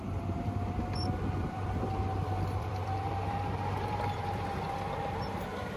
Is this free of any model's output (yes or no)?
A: no